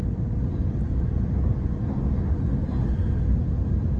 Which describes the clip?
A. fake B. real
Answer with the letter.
B